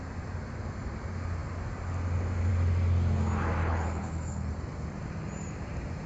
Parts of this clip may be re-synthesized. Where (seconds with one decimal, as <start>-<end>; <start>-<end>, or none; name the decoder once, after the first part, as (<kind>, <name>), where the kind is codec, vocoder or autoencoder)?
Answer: 3.6-4.5 (codec, HILCodec)